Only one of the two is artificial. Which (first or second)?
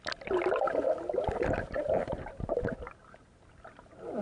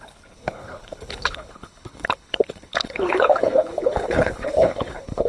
second